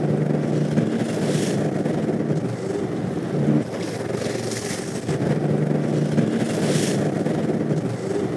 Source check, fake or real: real